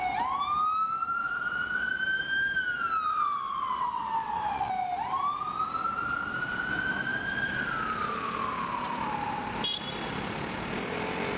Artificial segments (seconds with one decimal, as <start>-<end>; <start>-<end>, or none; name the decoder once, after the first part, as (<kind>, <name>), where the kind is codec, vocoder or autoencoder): 1.2-1.9 (vocoder, WaveNeXt); 3.1-4.7